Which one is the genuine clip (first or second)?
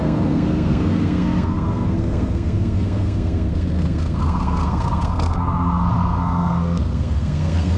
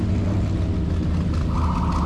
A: second